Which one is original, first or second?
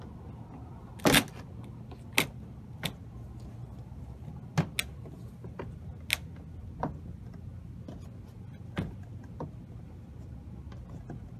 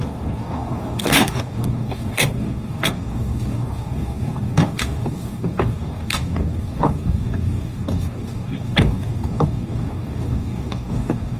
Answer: first